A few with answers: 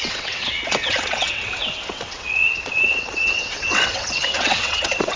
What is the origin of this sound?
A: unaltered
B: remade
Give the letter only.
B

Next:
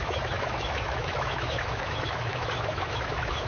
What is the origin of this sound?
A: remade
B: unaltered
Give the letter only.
A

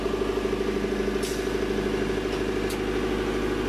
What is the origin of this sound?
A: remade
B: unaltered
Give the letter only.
B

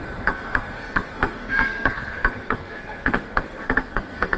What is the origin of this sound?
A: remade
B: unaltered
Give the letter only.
A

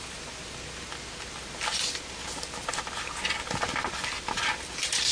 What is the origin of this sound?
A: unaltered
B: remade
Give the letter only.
A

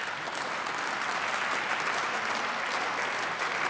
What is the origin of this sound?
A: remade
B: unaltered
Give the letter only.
B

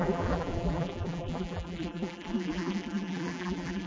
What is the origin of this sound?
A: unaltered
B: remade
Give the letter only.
B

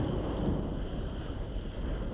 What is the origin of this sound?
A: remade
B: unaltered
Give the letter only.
B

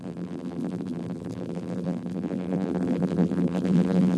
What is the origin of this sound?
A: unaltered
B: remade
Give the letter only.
B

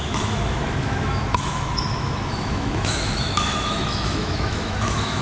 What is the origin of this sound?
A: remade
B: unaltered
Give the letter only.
A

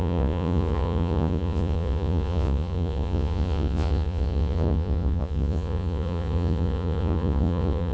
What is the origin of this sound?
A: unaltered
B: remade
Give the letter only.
B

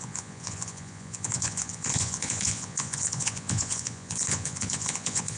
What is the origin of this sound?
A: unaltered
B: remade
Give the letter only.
B